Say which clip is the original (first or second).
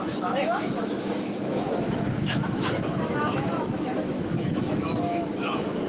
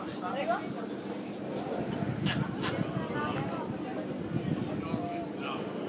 second